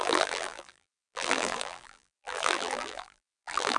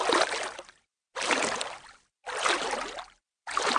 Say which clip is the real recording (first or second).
second